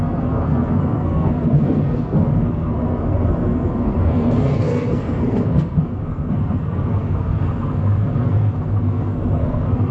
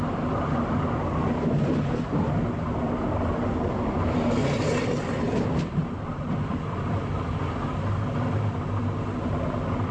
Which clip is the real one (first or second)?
second